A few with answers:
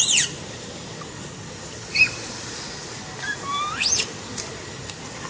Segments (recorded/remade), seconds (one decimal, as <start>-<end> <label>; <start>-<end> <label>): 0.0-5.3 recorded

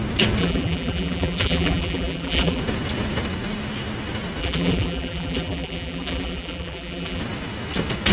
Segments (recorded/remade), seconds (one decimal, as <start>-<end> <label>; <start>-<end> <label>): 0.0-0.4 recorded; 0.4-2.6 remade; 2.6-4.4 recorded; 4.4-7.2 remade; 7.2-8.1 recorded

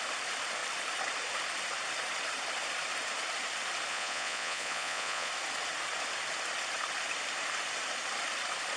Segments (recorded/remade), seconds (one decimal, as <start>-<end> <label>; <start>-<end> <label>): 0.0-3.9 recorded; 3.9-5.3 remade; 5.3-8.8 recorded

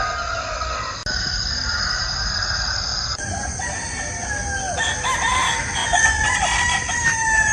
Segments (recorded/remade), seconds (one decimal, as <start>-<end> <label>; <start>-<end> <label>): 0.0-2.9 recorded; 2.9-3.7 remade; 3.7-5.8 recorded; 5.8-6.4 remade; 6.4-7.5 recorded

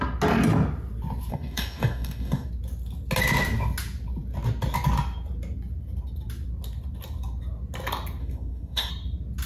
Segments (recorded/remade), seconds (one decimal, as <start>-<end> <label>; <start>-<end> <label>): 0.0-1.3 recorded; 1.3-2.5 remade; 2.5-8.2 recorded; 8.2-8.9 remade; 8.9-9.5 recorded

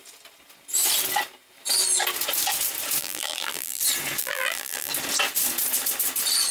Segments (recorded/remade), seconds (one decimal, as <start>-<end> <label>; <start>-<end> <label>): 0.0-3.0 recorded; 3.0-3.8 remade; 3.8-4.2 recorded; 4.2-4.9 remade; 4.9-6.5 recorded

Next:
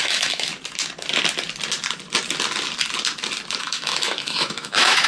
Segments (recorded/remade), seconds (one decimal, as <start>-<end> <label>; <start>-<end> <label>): 0.0-0.5 remade; 0.5-3.6 recorded; 3.6-5.1 remade

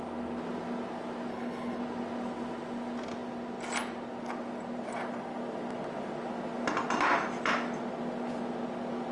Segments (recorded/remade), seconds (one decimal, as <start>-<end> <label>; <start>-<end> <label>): 0.0-1.3 recorded; 1.3-1.8 remade; 1.8-9.1 recorded